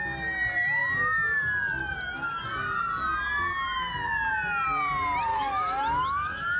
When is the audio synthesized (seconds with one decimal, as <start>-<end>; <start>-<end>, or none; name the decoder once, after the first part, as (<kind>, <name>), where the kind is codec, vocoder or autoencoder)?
5.3-6.6 (autoencoder, DAC-VAE)